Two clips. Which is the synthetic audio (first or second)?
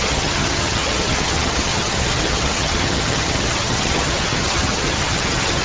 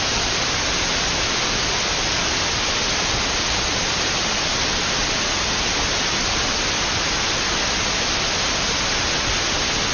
first